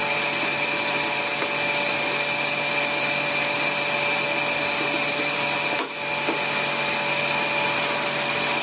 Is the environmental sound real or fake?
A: real